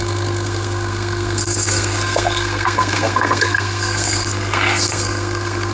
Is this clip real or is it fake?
fake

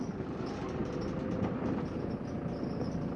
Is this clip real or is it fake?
real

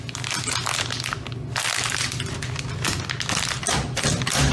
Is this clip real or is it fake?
real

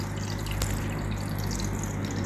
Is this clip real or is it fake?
real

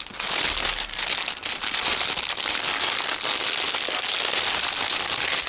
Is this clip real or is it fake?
real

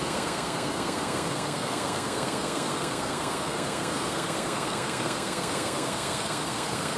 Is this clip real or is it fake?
fake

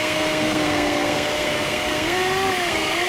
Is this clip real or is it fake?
fake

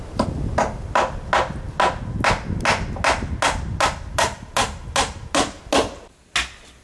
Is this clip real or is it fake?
real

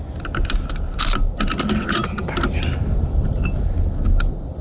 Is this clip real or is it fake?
real